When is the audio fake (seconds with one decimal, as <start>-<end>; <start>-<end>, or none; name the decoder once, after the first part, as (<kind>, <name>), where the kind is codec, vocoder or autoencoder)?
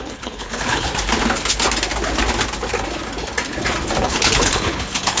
0.0-0.9 (codec, HILCodec); 4.0-5.2